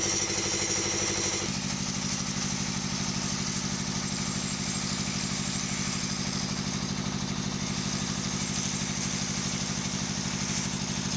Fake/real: real